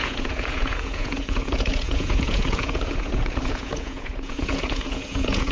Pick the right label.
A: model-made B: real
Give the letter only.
A